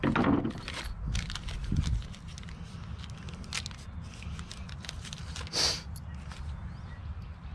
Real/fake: real